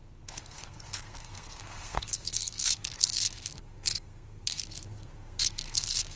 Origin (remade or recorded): remade